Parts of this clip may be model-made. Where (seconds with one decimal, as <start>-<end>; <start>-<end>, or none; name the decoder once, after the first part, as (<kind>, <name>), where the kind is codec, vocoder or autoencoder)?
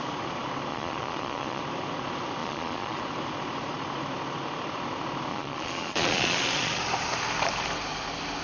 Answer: 0.7-1.6 (vocoder, Vocos); 2.4-3.0; 5.3-6.8